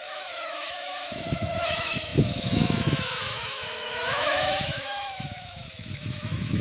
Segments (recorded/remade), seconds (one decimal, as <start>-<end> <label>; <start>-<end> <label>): 0.0-6.6 remade